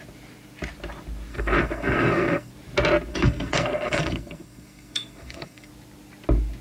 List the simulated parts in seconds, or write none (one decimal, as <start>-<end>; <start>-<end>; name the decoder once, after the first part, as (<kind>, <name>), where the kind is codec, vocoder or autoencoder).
1.3-2.5 (codec, SNAC); 3.1-5.7